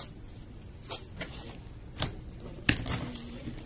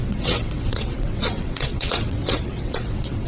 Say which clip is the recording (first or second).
first